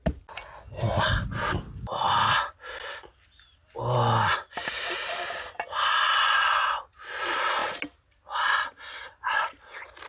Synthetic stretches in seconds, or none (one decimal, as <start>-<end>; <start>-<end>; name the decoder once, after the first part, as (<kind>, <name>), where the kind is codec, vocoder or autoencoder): none